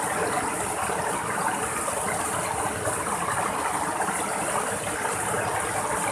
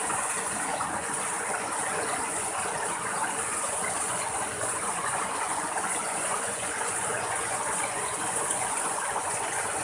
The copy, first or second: second